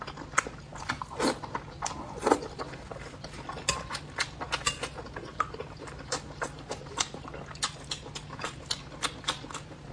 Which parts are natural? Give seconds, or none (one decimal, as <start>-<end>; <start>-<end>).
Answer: 0.0-5.3; 7.3-9.9